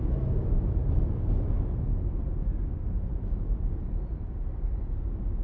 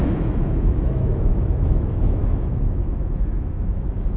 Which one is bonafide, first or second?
first